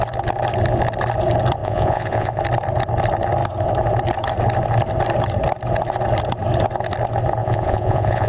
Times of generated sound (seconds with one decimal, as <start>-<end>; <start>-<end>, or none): 1.6-2.4; 7.4-8.3